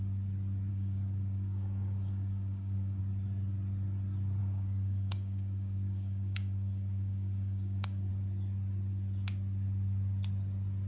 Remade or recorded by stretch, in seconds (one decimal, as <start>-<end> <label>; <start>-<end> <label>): 0.0-0.7 recorded; 0.7-3.0 remade; 3.0-4.4 recorded; 4.4-8.1 remade; 8.1-10.9 recorded